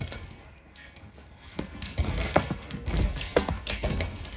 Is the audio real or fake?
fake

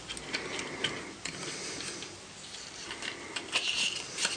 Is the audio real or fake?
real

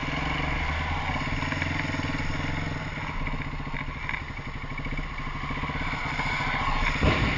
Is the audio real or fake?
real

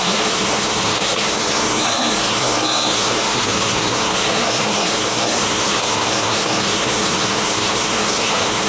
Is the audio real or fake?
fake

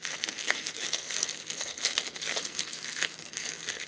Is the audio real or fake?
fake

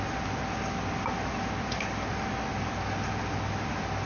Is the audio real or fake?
real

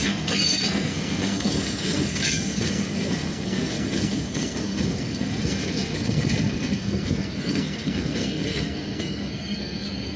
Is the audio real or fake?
fake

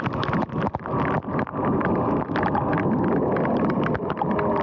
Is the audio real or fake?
real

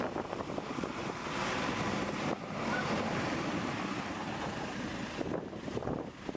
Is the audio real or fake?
fake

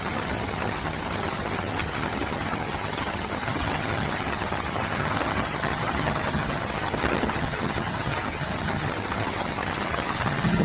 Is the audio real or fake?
fake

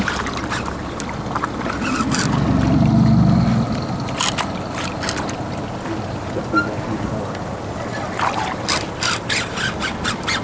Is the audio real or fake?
real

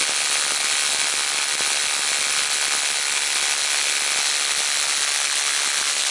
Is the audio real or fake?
real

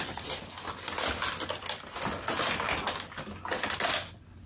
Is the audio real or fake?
real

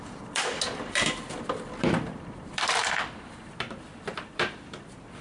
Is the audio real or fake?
fake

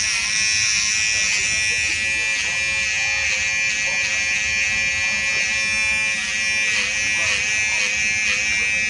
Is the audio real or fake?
real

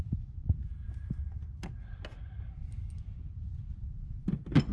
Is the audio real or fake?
real